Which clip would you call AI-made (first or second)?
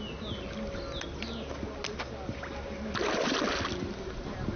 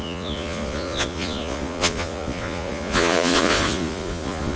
second